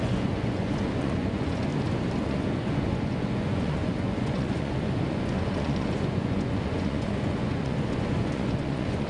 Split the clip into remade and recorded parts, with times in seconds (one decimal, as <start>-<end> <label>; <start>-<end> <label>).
0.0-1.7 remade; 1.7-2.2 recorded; 2.2-9.1 remade